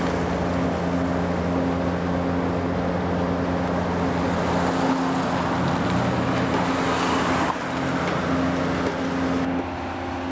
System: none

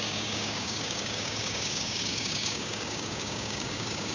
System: codec, DAC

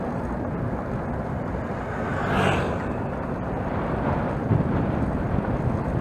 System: none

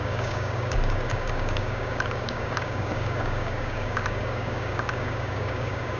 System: codec, DAC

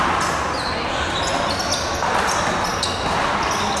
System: none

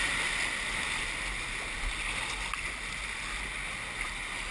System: none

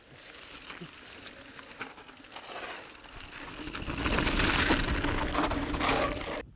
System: none